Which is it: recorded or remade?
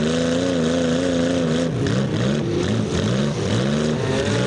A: recorded